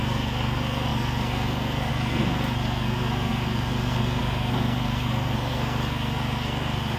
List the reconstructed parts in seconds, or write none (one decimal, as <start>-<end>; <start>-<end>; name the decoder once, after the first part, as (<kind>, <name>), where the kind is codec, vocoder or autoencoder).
0.0-7.0 (codec, SNAC)